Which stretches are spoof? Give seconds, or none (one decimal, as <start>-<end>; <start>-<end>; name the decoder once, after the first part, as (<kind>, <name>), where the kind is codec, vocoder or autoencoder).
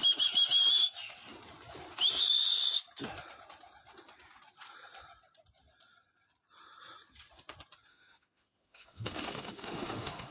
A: 7.9-10.3 (autoencoder, DAC-VAE)